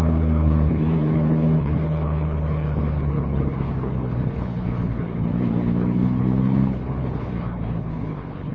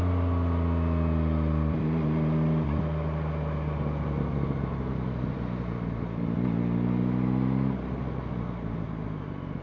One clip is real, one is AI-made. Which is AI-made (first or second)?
first